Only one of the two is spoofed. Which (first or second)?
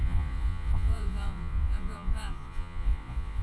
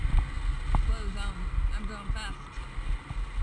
first